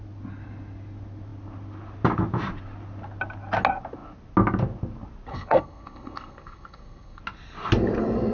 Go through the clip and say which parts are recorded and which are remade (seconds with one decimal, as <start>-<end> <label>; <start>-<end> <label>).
0.0-5.3 recorded; 5.3-7.2 remade; 7.2-8.3 recorded